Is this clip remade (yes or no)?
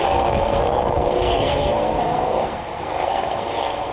yes